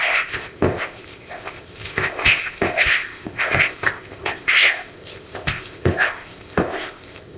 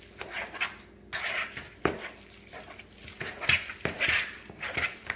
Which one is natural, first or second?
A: second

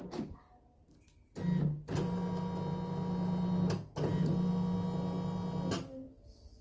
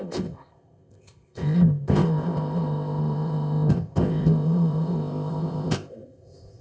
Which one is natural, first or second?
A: first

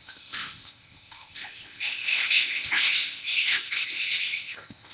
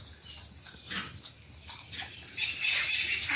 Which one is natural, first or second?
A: second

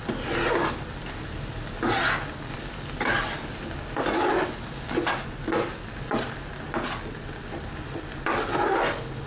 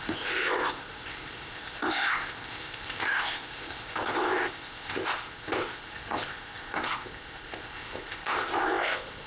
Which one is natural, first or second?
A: first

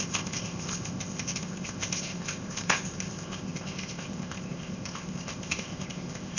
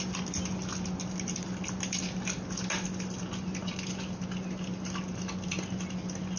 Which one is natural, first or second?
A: second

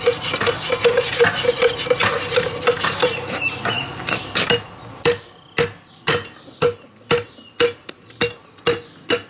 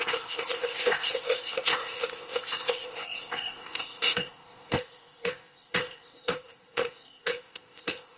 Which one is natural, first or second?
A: first